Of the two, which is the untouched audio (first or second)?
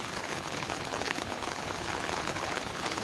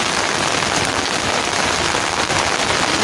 second